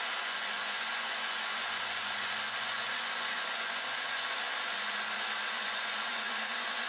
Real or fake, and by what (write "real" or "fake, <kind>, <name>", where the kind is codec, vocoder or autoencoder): fake, vocoder, Vocos